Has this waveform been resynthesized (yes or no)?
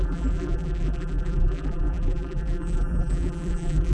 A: yes